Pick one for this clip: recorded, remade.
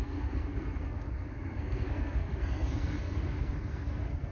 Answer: remade